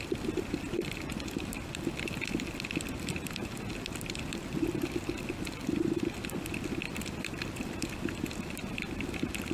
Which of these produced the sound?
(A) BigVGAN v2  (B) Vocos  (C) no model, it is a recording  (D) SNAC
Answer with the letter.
C